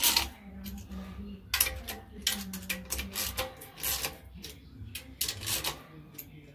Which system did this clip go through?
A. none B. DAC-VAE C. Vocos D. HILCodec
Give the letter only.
A